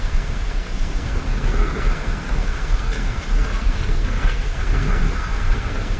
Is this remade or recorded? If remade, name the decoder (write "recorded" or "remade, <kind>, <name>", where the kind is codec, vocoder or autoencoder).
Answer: remade, codec, SNAC